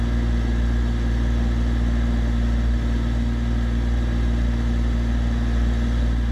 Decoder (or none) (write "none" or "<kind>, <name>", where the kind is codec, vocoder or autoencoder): none